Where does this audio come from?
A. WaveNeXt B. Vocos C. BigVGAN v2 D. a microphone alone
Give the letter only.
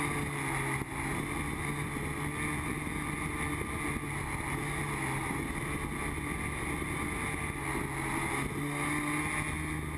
D